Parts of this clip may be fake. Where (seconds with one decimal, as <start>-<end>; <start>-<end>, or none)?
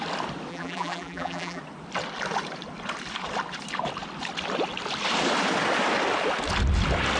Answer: 0.5-1.6